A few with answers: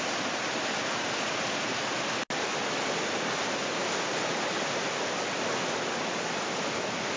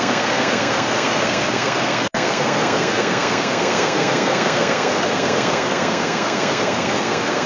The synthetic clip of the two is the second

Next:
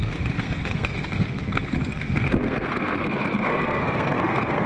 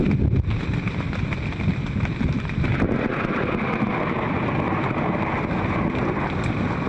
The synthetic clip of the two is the first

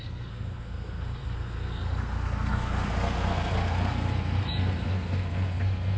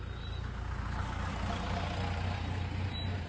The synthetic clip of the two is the first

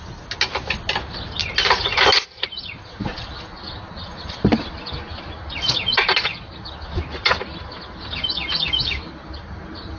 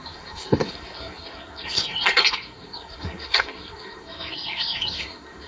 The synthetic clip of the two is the second